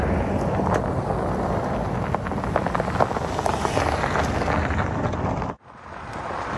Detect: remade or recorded recorded